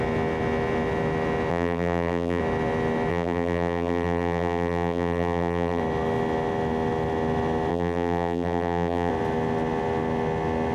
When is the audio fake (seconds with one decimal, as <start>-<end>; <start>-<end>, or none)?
1.5-2.4; 3.1-5.8; 7.7-9.1